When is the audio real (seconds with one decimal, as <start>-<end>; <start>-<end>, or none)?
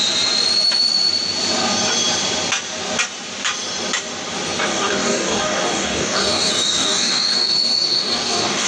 0.0-4.7